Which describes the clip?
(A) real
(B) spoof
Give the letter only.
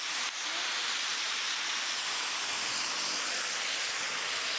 A